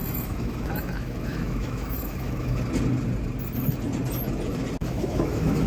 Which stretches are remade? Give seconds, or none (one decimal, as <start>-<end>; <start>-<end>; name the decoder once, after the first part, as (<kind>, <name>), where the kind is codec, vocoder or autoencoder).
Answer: 0.0-2.6 (autoencoder, DAC-VAE); 4.8-5.7